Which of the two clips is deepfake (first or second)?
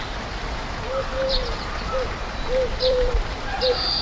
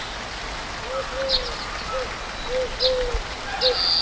first